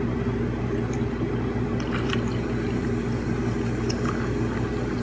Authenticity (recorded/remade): recorded